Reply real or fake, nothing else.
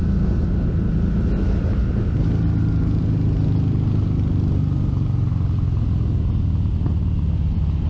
real